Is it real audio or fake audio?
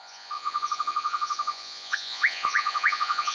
fake